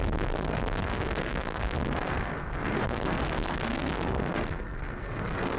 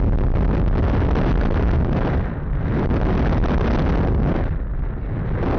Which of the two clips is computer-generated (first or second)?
first